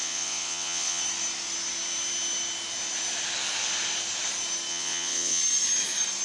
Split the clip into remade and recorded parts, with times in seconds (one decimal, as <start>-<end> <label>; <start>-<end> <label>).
0.0-1.0 remade; 1.0-4.7 recorded; 4.7-5.4 remade; 5.4-6.2 recorded